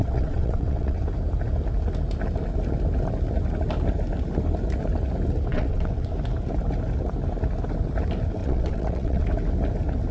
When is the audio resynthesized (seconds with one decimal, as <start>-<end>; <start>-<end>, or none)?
0.0-1.0; 5.5-6.1; 8.4-9.2